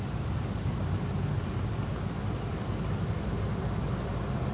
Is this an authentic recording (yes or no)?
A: yes